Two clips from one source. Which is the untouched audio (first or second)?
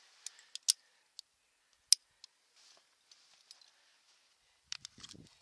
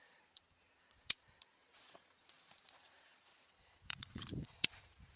first